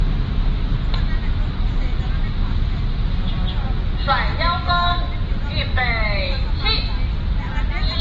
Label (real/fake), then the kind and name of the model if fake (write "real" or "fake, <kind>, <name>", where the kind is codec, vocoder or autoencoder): real